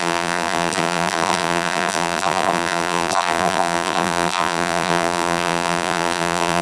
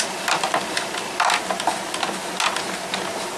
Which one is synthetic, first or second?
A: first